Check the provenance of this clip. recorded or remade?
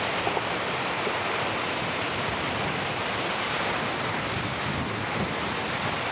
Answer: recorded